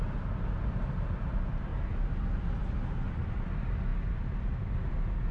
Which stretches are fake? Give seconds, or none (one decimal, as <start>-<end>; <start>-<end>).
none